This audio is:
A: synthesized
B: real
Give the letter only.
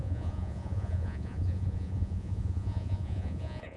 A